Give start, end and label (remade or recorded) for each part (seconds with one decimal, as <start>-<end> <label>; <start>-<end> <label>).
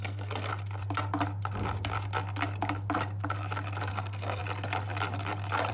0.0-0.5 remade; 0.5-3.9 recorded; 3.9-4.4 remade; 4.4-5.7 recorded